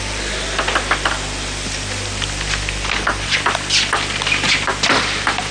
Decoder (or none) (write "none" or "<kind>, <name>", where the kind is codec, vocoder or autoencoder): none